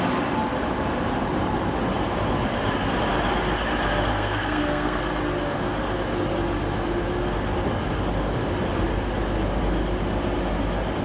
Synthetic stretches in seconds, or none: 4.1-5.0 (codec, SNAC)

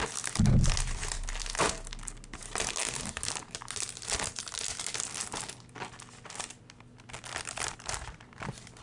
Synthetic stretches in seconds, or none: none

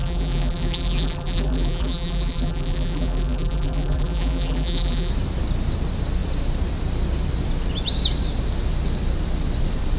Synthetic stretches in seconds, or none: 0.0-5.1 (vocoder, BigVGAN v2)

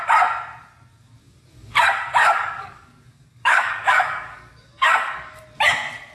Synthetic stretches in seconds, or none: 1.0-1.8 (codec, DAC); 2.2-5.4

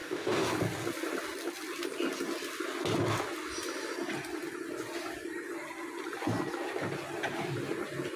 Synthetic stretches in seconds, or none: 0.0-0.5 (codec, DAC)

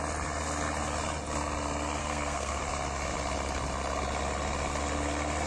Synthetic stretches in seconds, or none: 2.0-2.6 (codec, SNAC)

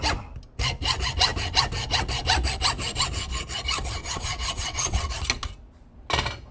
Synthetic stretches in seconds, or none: 4.0-5.1 (vocoder, WaveNeXt)

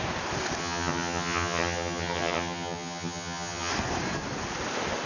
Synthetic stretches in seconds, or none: 0.6-3.7 (vocoder, HiFi-GAN)